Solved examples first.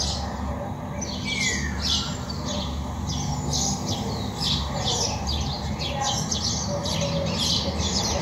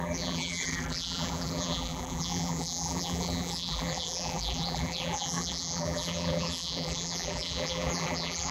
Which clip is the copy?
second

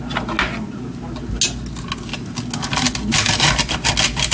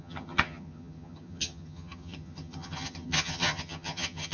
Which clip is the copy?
second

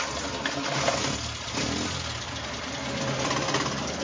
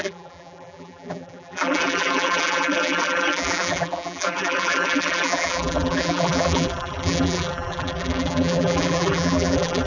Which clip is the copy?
second